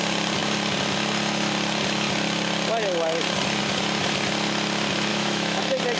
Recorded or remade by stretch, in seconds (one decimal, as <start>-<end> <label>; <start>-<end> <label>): 0.0-5.1 recorded; 5.1-5.6 remade; 5.6-6.0 recorded